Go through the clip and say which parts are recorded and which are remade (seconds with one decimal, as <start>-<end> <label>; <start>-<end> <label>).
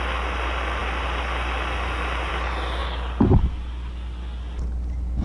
0.0-5.2 recorded